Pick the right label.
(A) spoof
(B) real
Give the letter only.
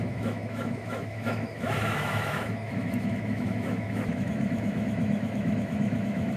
A